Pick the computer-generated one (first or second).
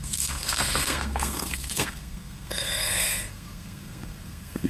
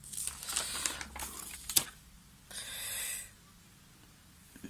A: first